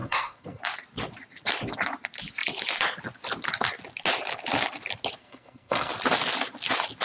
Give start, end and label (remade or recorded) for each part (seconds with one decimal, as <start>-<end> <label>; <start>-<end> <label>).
0.0-0.6 remade; 0.6-5.2 recorded; 5.2-5.9 remade; 5.9-7.0 recorded